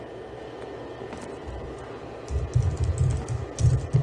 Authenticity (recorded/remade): recorded